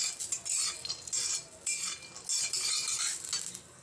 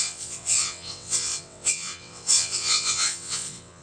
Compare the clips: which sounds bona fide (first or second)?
first